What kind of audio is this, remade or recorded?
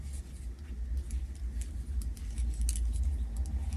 recorded